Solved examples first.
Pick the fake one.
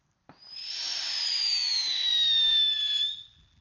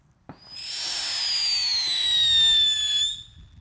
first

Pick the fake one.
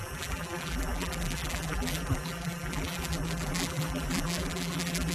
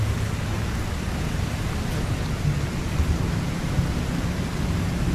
first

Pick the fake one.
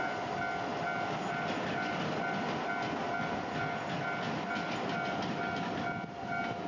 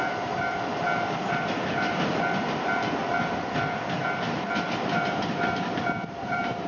second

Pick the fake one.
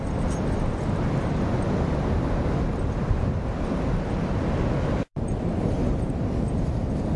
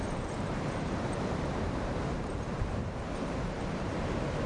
second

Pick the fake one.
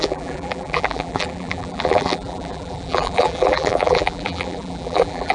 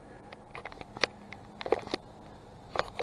first